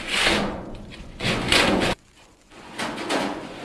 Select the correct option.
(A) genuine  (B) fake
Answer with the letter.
B